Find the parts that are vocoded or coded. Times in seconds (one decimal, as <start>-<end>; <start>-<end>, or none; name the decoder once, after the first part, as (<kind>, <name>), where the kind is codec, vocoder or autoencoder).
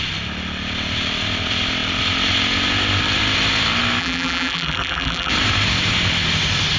4.0-5.3 (vocoder, BigVGAN v2)